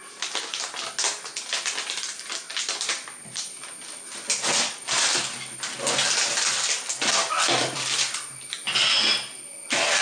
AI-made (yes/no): no